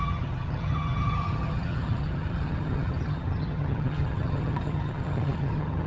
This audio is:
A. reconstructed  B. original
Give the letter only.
A